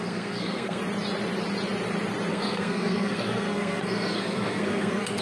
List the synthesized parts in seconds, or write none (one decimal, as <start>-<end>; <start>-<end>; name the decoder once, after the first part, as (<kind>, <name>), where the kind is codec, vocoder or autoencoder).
0.0-0.8 (codec, SNAC); 2.3-5.2